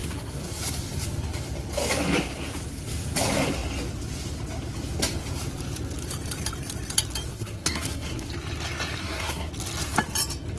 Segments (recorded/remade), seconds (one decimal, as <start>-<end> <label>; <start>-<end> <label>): 0.0-0.6 remade; 0.6-7.3 recorded; 7.3-8.3 remade; 8.3-9.0 recorded; 9.0-9.5 remade; 9.5-10.6 recorded